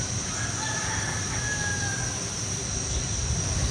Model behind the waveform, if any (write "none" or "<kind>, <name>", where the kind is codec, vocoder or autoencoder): none